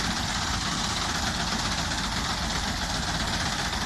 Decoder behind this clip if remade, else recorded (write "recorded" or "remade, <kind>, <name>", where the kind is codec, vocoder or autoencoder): recorded